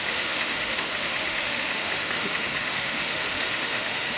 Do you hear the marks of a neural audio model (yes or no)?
yes